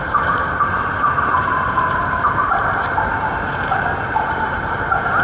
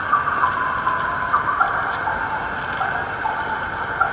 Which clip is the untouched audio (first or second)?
second